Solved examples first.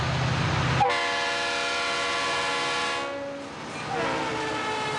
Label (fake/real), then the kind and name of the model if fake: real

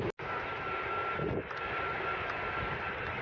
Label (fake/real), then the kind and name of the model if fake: real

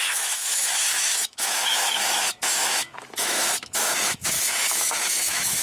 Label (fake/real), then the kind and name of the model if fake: fake, autoencoder, DAC-VAE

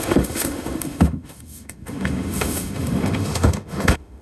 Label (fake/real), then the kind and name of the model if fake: fake, autoencoder, DAC-VAE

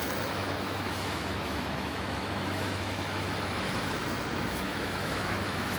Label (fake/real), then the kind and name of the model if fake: fake, autoencoder, DAC-VAE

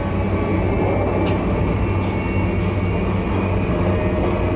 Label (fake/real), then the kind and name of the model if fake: real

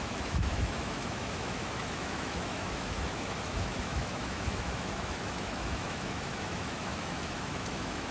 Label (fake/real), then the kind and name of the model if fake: fake, autoencoder, DAC-VAE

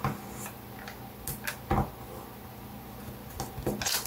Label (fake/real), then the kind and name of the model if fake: real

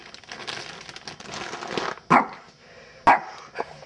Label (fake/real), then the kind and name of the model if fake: real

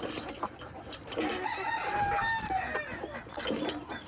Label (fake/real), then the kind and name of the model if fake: real